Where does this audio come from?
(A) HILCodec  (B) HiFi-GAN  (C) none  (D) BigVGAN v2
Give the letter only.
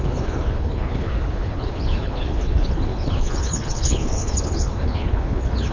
A